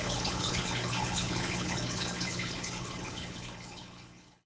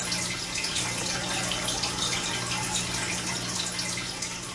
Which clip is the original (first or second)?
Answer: second